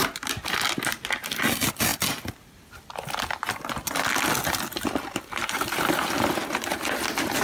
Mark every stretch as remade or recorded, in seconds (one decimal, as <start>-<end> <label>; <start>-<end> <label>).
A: 0.0-7.4 recorded